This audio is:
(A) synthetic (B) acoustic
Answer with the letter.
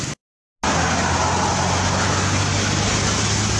B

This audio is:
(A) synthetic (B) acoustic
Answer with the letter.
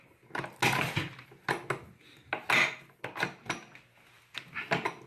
B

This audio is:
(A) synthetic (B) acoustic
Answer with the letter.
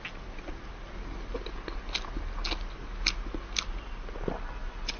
B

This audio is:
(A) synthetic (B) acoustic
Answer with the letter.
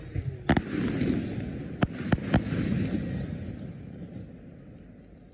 B